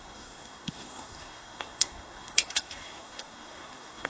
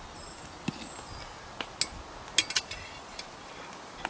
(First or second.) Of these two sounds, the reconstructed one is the first